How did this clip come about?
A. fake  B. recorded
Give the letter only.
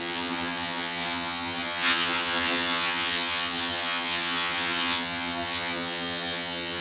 A